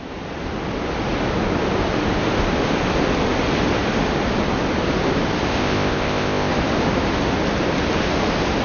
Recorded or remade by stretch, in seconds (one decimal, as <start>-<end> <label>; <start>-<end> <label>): 0.0-5.5 recorded; 5.5-6.5 remade; 6.5-8.6 recorded